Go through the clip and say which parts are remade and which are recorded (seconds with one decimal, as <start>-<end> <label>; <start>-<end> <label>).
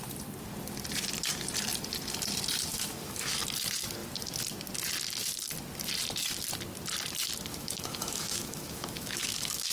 0.0-2.7 recorded; 2.7-3.4 remade; 3.4-7.5 recorded; 7.5-9.7 remade